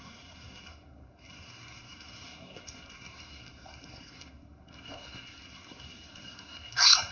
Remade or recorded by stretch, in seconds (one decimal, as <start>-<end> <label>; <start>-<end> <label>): 0.0-7.1 remade